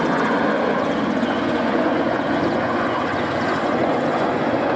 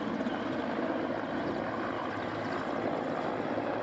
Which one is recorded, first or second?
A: second